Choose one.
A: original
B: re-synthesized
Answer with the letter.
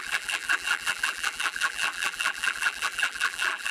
B